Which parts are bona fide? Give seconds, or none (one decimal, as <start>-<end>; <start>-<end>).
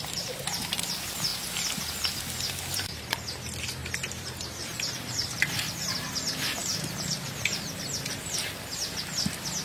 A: 0.0-3.8; 6.1-9.6